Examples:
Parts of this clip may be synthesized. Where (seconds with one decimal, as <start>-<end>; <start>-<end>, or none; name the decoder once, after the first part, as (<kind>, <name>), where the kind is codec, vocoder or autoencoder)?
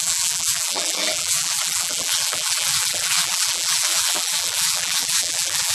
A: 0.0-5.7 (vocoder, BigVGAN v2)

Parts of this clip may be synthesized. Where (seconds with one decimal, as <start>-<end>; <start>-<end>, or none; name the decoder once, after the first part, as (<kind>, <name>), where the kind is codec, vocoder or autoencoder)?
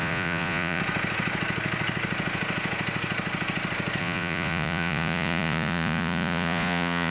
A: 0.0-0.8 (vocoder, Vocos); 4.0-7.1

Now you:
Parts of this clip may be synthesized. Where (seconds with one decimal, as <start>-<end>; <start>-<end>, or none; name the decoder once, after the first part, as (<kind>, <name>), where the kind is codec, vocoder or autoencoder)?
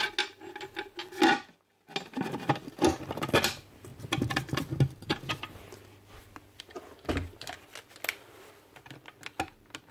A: none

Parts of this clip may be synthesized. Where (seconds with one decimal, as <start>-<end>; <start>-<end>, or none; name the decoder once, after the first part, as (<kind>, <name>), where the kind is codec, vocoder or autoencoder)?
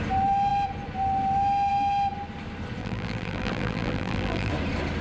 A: 2.8-4.5 (vocoder, BigVGAN v2)